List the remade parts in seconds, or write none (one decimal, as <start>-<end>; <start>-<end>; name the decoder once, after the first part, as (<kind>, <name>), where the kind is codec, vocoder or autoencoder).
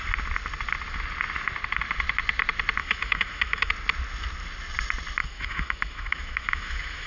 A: 2.8-3.7 (autoencoder, DAC-VAE); 5.2-7.1